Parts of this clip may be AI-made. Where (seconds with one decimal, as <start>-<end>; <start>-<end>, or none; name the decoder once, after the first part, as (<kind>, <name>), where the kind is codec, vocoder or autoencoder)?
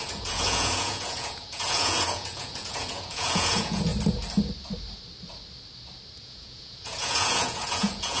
0.0-3.9 (vocoder, Vocos); 6.2-8.2